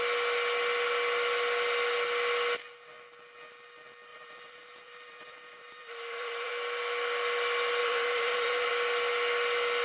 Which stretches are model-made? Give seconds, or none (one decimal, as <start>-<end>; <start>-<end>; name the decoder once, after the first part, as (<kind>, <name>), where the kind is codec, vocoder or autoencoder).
4.1-6.5 (vocoder, BigVGAN v2); 7.8-8.7